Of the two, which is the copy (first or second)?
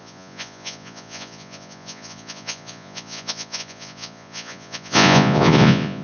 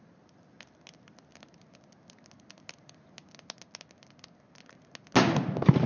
first